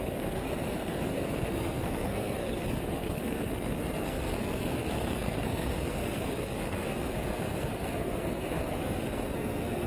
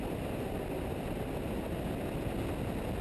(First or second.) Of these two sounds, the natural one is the second